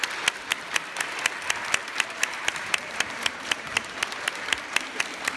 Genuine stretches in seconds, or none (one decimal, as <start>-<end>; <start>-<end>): 0.0-1.8; 5.0-5.4